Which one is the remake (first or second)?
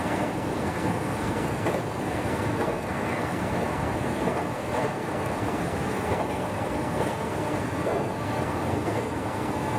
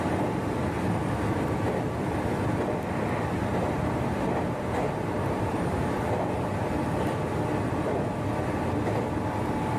first